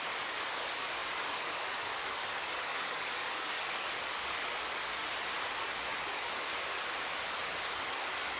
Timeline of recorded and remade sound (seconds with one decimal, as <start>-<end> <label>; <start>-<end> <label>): 0.0-5.0 remade; 5.0-5.6 recorded; 5.6-6.8 remade; 6.8-7.4 recorded; 7.4-8.4 remade